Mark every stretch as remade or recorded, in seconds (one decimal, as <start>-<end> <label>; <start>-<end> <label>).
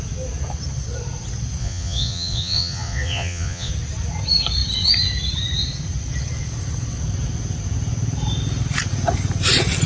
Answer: 0.0-1.6 recorded; 1.6-3.7 remade; 3.7-9.9 recorded